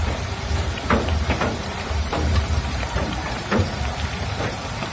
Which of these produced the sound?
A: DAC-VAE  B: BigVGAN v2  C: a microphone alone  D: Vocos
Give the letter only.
B